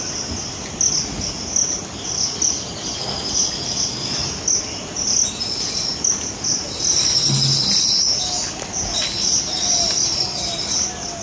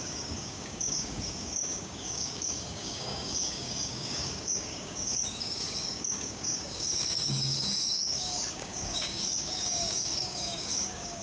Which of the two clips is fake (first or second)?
second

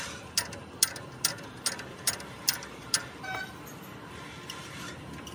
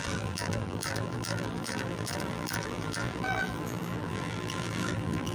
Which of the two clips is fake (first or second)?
second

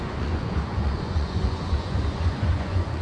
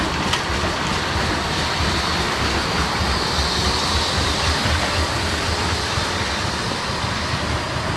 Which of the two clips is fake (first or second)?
first